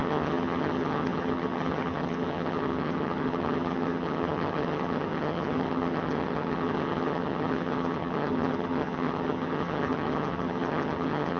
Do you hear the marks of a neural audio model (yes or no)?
yes